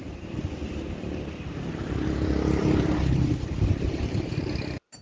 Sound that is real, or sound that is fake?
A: real